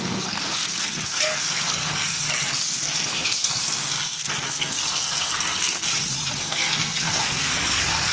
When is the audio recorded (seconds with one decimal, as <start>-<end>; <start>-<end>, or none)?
5.9-6.4